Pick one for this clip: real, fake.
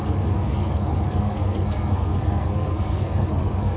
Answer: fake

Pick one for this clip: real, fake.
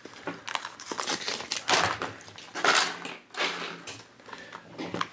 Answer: real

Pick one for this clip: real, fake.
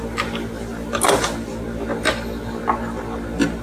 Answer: real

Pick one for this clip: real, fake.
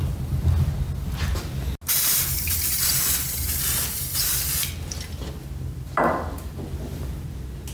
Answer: real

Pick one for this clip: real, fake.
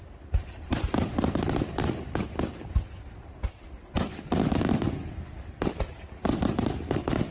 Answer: real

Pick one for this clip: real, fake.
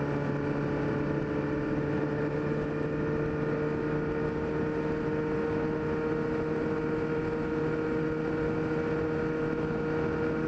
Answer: real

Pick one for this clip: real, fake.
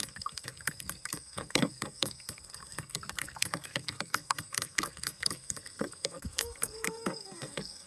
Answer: fake